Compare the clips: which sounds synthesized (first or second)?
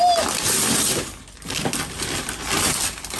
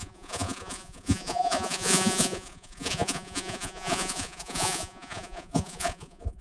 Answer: second